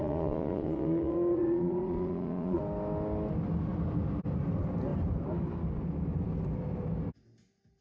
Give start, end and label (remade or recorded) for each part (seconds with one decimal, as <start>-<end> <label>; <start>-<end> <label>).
0.0-2.6 remade; 2.6-7.8 recorded